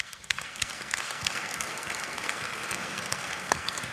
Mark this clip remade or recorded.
remade